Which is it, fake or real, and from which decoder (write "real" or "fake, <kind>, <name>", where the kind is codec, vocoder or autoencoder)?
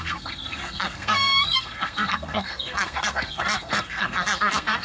fake, codec, SNAC